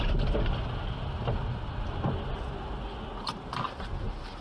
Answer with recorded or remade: recorded